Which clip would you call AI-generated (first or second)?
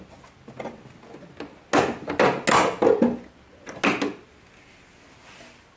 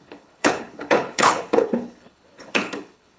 second